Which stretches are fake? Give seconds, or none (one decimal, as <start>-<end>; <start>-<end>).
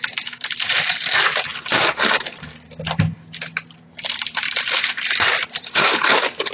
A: 0.0-1.5; 4.9-6.5